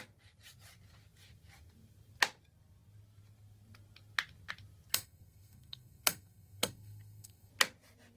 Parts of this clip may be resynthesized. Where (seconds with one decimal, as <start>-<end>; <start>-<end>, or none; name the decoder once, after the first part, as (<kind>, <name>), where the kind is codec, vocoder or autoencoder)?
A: 4.9-7.5 (codec, SNAC)